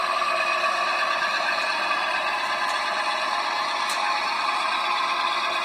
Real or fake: real